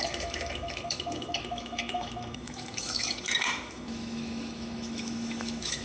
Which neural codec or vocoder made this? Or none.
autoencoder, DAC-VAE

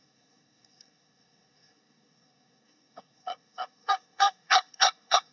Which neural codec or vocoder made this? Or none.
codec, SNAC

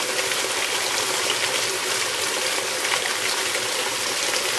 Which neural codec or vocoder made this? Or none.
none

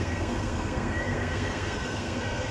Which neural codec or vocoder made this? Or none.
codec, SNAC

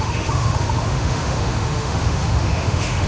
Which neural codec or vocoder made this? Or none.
autoencoder, DAC-VAE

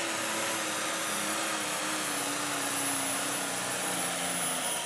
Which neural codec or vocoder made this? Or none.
none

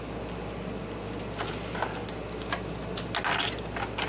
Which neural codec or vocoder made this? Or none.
none